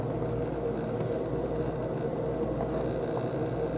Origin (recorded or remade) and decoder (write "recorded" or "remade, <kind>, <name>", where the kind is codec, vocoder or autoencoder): recorded